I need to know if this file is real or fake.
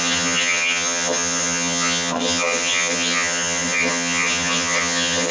fake